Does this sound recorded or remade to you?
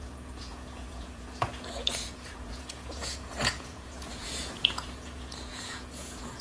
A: remade